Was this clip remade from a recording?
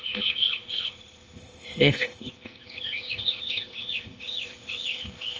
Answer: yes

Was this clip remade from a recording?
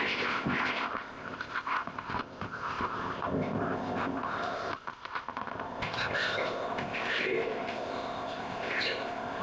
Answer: yes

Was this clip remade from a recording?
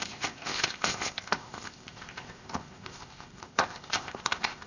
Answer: yes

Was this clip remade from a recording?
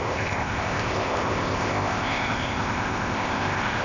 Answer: yes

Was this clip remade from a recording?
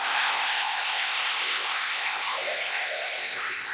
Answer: yes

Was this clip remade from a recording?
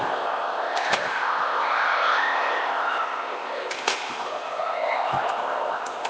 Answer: yes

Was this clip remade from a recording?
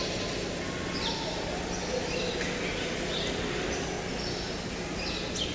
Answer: no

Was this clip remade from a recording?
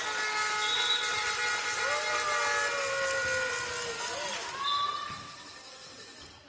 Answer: no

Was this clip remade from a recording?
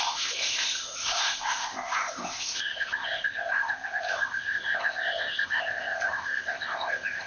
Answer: yes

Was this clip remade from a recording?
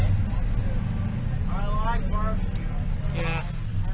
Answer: no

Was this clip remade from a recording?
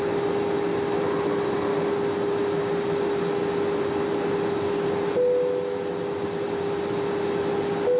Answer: no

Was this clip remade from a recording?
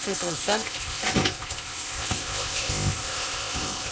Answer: yes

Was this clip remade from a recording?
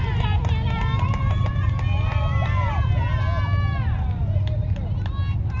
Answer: no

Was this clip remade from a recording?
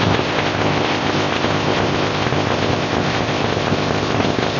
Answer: yes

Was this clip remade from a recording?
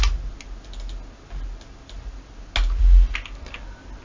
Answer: no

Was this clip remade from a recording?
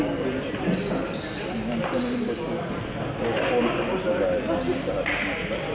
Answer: no